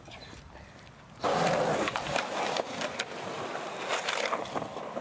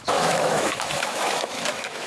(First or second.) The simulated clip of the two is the second